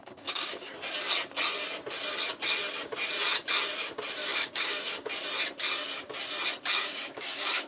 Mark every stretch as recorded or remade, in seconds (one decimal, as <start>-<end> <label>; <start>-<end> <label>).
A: 0.0-0.7 remade; 0.7-4.2 recorded; 4.2-5.1 remade; 5.1-6.8 recorded; 6.8-7.7 remade